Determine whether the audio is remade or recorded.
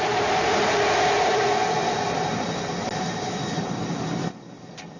recorded